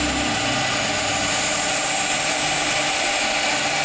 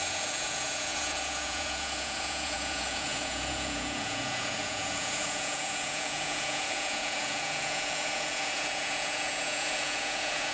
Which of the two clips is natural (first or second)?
first